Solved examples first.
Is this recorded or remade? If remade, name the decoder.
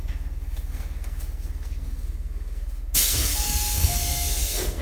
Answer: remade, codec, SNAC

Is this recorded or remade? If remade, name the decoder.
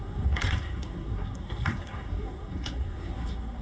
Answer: remade, codec, SNAC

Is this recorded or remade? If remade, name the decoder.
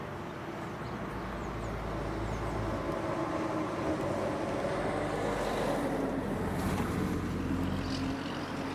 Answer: recorded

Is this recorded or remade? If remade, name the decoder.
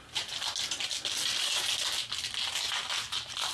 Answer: recorded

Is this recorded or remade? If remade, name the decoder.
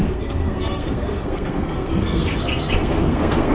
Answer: remade, codec, SNAC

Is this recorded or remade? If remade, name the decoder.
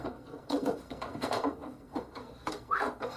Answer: remade, codec, SNAC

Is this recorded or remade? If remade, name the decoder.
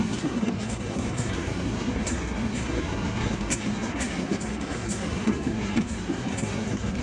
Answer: remade, codec, SNAC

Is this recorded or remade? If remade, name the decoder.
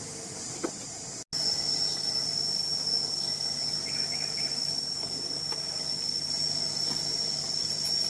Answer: recorded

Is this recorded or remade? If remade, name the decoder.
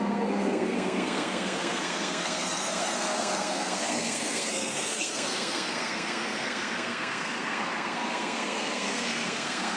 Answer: remade, codec, SNAC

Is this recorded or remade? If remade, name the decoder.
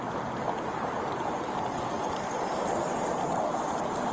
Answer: recorded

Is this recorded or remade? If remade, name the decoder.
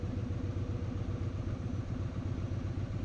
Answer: recorded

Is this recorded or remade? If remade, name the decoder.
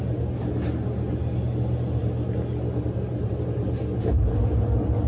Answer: recorded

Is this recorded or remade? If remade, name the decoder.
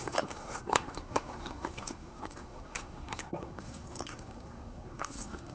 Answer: remade, codec, SNAC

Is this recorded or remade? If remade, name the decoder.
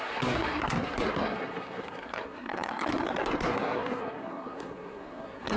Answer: remade, codec, SNAC